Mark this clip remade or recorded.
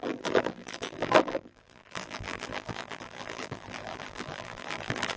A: remade